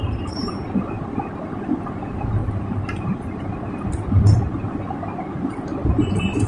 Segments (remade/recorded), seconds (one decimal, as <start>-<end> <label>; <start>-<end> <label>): 0.0-2.4 recorded; 2.4-3.5 remade; 3.5-6.5 recorded